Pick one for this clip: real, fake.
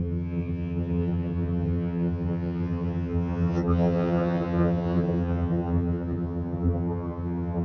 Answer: fake